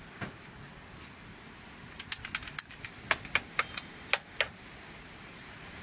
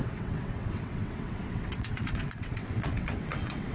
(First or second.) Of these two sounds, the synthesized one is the second